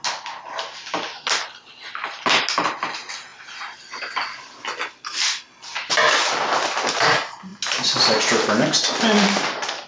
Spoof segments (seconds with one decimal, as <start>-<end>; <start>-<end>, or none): none